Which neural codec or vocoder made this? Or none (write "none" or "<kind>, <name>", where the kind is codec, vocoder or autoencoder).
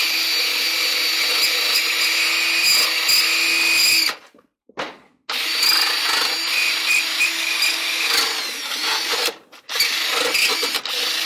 none